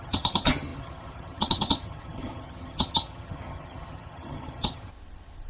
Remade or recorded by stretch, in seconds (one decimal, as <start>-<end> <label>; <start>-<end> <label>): 0.0-4.9 remade; 4.9-5.5 recorded